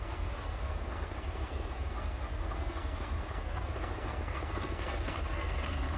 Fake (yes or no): yes